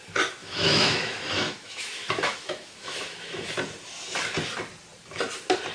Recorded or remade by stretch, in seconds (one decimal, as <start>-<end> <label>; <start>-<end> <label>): 0.0-0.4 recorded; 0.4-3.5 remade; 3.5-5.7 recorded